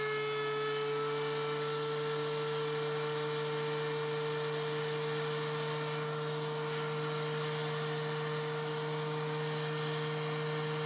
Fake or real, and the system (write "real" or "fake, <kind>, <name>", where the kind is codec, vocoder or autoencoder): real